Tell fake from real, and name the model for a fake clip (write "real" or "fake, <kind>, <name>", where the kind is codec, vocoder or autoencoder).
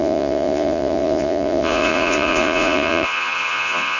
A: fake, vocoder, Vocos